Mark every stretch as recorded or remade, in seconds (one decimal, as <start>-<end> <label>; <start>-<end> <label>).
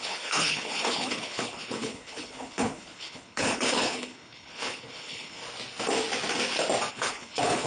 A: 0.0-5.4 remade; 5.4-6.9 recorded; 6.9-7.7 remade